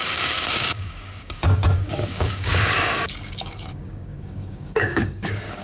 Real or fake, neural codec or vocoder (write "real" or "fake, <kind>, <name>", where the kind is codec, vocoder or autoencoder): fake, codec, DAC